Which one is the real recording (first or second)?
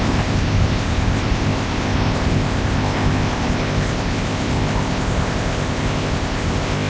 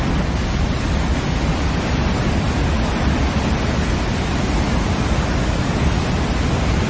second